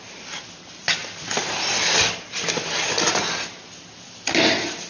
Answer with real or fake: real